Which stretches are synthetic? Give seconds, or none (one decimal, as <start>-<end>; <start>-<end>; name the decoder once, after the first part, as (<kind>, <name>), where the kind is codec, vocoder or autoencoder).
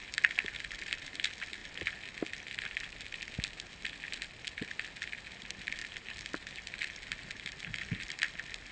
none